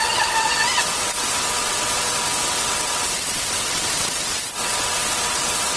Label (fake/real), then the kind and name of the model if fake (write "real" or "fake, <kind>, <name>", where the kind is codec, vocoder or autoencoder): fake, vocoder, WaveNeXt